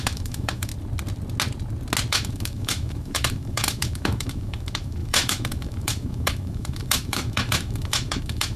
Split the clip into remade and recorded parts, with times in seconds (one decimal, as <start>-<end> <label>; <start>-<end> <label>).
0.0-0.7 remade; 0.7-2.1 recorded; 2.1-8.6 remade